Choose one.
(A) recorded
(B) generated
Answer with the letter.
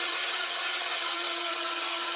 B